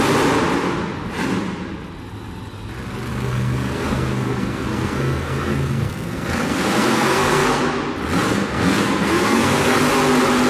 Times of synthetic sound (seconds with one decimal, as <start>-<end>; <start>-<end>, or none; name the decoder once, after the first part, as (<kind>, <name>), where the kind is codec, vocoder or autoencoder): 3.1-7.6 (codec, SNAC); 8.3-9.8